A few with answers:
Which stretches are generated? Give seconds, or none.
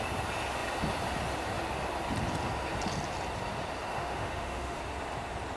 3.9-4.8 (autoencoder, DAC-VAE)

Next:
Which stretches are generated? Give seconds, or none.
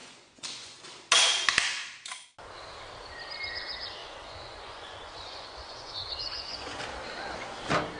0.0-0.8 (vocoder, Vocos); 4.0-6.8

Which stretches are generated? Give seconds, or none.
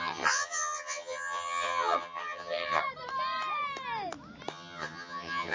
0.0-2.8 (vocoder, HiFi-GAN); 4.5-5.5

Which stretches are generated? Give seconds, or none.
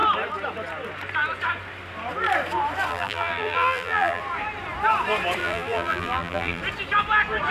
2.9-4.2 (vocoder, BigVGAN v2); 5.4-6.6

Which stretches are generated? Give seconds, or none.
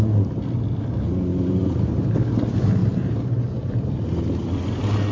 1.3-1.8 (vocoder, BigVGAN v2); 2.8-4.5